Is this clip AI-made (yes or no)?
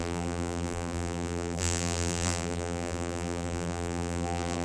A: yes